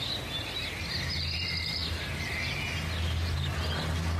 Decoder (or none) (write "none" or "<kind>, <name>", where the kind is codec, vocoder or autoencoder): none